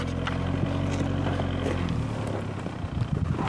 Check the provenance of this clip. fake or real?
real